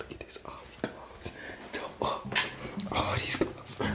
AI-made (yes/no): no